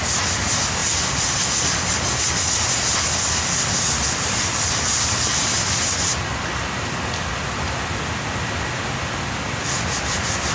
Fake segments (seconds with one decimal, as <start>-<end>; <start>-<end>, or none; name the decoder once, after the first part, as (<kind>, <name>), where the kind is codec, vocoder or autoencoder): 0.0-10.5 (vocoder, BigVGAN v2)